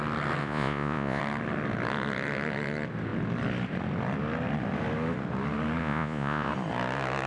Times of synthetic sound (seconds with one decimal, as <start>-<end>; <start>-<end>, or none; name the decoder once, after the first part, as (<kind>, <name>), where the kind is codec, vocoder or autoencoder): 0.4-1.2 (vocoder, Vocos); 5.8-6.5